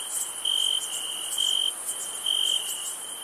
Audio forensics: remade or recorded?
recorded